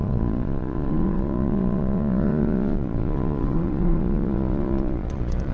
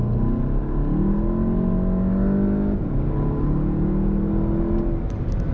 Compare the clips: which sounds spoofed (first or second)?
first